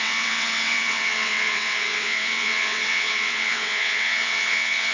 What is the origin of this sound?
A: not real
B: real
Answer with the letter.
A